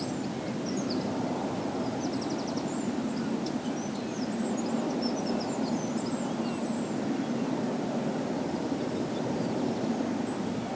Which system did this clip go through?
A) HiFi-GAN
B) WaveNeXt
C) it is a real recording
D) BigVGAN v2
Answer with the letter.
C